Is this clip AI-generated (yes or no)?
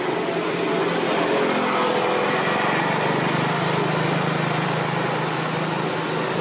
no